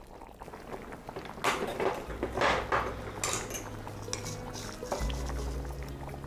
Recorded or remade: recorded